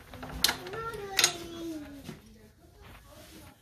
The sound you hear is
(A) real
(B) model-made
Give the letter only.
A